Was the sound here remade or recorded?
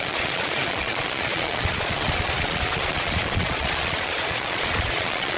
remade